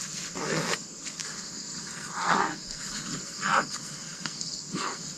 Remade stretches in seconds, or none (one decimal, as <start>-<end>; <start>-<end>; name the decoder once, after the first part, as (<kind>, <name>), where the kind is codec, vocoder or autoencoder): 0.0-5.2 (codec, SNAC)